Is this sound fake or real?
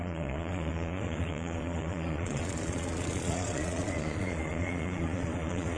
fake